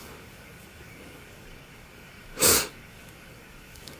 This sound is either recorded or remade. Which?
remade